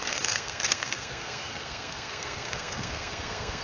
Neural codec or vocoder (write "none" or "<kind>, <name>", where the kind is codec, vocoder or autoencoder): codec, SNAC